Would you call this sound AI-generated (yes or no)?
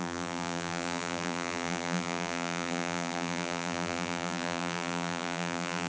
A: yes